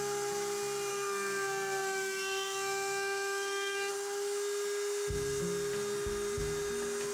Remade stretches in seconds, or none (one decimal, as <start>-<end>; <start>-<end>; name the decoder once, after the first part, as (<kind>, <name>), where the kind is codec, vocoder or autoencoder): 0.9-3.9 (codec, SNAC)